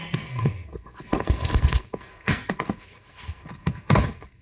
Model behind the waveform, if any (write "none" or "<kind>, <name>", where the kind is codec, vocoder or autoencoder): codec, SNAC